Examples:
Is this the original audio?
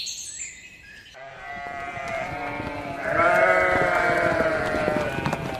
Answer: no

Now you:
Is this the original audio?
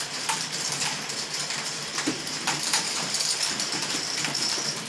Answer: no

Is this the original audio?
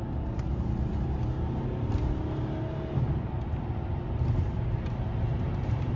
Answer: yes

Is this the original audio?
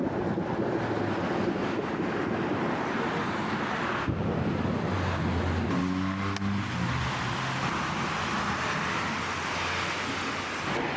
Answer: yes